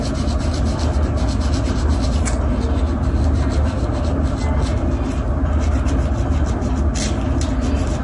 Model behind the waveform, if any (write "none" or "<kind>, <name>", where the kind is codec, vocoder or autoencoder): none